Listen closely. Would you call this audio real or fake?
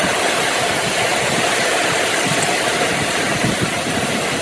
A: real